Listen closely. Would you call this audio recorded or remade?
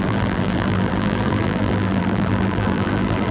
remade